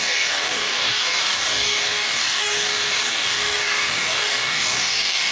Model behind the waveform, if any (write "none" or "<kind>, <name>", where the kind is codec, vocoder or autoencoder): codec, DAC